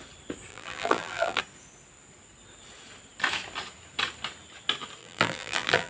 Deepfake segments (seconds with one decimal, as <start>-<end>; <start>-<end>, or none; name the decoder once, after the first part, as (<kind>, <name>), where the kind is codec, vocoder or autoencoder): 0.5-1.4 (vocoder, BigVGAN v2); 5.0-5.9